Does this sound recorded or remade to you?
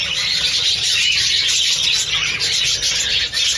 recorded